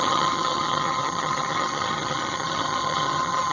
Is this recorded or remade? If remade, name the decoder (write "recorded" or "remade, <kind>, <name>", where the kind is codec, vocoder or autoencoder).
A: remade, vocoder, HiFi-GAN